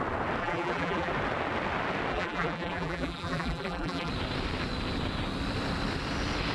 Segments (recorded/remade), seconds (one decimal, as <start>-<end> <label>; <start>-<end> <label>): 0.0-0.4 recorded; 0.4-1.1 remade; 1.1-2.1 recorded; 2.1-4.1 remade; 4.1-6.5 recorded